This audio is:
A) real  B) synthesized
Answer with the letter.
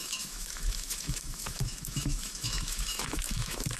B